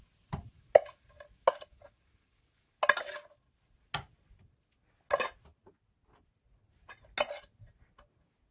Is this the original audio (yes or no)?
yes